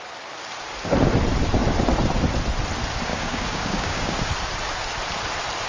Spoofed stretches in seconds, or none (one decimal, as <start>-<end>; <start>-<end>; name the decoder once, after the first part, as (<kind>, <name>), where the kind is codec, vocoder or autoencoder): 3.1-4.3 (codec, DAC)